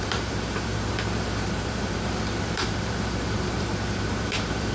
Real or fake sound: fake